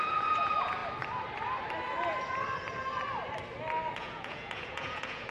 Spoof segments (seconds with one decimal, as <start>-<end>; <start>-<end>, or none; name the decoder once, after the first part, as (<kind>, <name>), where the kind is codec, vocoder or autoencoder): 0.0-0.8 (vocoder, Vocos); 3.9-5.3

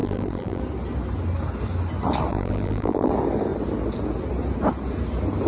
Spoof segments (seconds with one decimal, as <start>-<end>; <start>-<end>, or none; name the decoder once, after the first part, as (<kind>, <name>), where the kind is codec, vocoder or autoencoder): 0.0-0.6 (vocoder, BigVGAN v2); 2.3-3.1

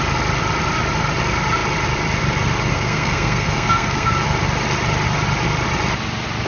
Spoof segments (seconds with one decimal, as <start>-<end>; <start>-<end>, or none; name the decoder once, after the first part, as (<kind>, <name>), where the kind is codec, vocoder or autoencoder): 2.7-4.1 (codec, SNAC)